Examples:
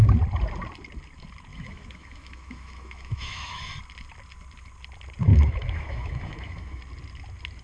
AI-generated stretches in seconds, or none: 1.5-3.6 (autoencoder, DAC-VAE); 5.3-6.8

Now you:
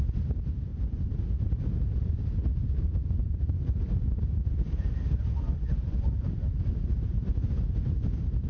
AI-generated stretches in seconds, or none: 0.7-1.2 (vocoder, BigVGAN v2); 3.0-6.6